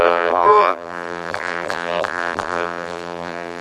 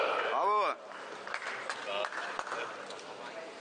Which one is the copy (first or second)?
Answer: first